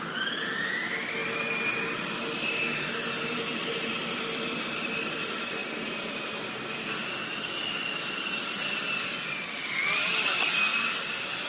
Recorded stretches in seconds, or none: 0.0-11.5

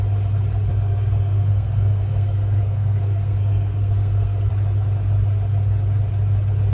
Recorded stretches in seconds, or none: 0.0-0.7; 4.5-6.7